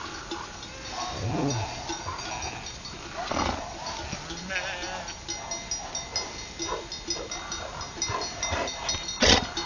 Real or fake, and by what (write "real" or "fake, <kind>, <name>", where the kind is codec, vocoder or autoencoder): real